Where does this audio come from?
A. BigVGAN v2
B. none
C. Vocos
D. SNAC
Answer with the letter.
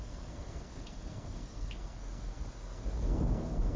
D